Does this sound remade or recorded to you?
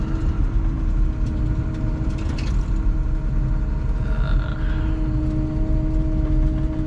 recorded